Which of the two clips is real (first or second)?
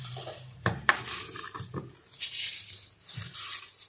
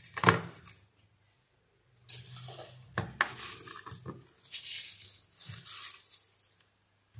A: second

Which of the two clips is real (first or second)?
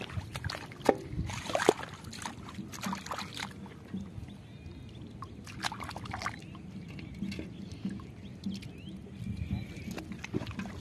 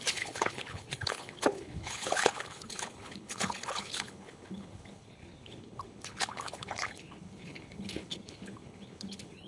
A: first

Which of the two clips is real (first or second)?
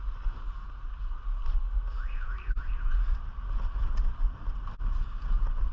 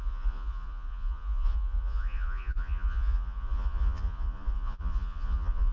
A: first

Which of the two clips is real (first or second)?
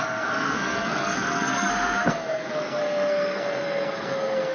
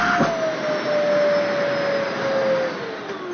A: second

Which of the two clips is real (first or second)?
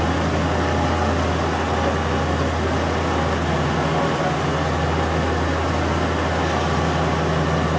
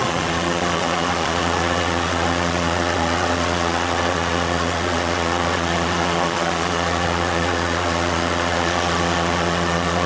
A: first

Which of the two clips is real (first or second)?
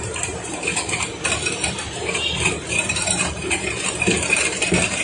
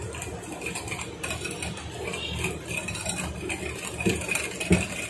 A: second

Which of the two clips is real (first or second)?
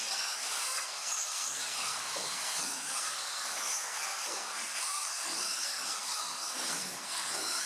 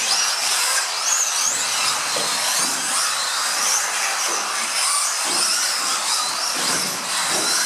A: second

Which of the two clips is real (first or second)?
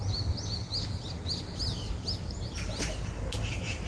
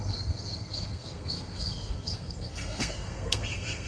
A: first